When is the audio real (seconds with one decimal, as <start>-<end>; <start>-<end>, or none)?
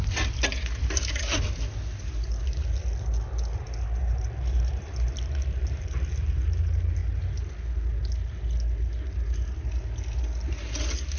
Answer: 0.0-4.0; 6.3-11.2